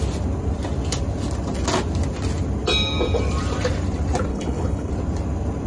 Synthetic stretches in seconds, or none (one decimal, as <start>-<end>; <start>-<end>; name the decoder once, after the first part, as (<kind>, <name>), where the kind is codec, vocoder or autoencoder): 4.3-4.9 (codec, HILCodec)